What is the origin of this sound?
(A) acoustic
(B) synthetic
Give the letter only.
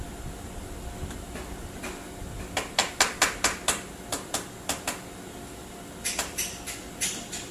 A